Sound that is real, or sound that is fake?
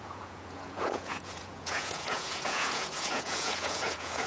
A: fake